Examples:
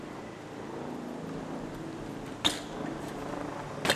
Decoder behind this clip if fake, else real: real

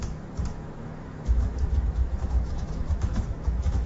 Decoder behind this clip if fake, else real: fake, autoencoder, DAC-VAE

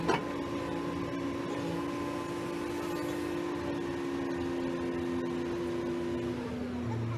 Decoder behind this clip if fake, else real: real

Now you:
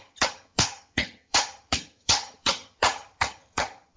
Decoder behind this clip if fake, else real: fake, vocoder, HiFi-GAN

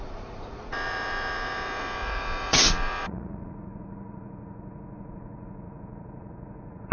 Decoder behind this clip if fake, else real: fake, vocoder, Vocos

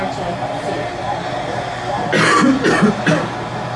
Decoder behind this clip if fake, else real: real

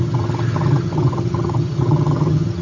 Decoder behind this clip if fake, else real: fake, vocoder, HiFi-GAN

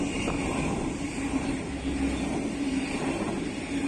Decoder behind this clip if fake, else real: real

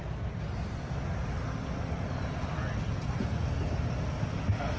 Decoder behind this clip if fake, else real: real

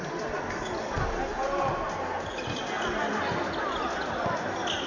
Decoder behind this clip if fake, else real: real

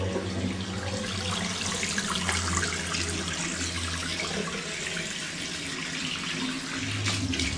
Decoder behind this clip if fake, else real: real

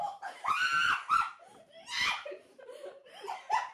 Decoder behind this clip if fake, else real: fake, vocoder, BigVGAN v2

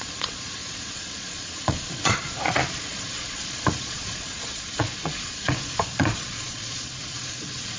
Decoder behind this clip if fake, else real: fake, vocoder, Vocos